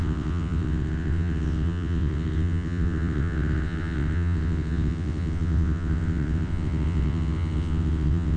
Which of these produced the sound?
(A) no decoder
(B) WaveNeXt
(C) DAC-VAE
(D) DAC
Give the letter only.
B